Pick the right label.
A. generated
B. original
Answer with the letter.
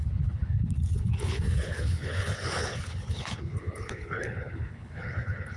A